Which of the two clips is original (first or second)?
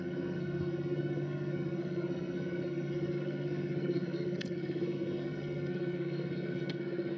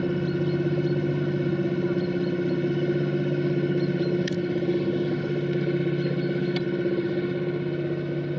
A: second